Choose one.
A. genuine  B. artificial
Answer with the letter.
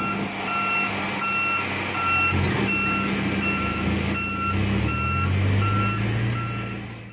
A